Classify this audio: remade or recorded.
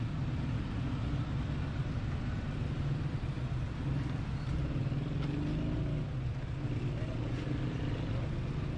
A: recorded